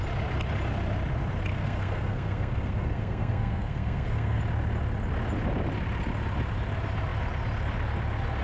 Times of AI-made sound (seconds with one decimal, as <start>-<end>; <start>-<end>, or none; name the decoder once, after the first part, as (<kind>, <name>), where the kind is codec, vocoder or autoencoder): 1.5-4.4 (codec, SNAC)